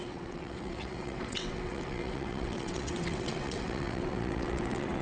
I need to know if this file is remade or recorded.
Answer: remade